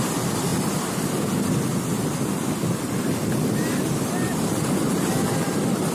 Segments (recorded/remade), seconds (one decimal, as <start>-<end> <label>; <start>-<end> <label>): 0.0-5.9 recorded